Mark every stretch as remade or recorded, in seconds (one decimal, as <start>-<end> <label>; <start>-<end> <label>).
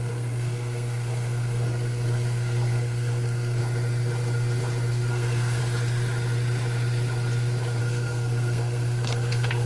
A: 0.0-3.6 remade; 3.6-5.1 recorded; 5.1-5.6 remade; 5.6-7.8 recorded; 7.8-9.7 remade